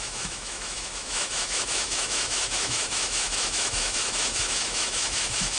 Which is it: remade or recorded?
remade